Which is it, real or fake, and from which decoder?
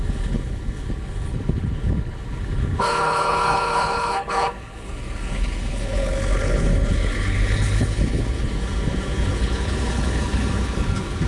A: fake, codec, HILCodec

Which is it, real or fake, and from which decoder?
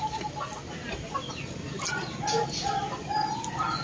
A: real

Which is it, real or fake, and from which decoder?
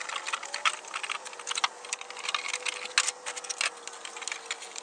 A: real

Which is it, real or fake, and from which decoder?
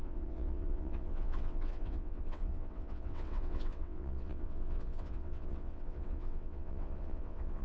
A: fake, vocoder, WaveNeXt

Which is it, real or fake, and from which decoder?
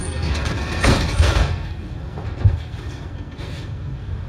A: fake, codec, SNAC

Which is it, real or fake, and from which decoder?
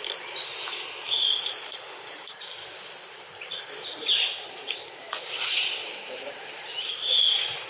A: real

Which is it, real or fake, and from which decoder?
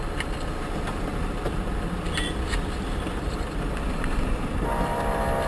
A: fake, vocoder, BigVGAN v2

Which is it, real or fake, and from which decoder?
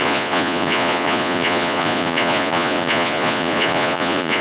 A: fake, vocoder, Vocos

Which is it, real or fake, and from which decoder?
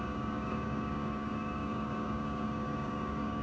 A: fake, codec, DAC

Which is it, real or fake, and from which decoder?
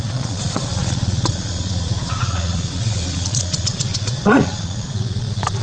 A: fake, vocoder, Vocos